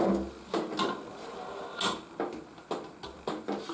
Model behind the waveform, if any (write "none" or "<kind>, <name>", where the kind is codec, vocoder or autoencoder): none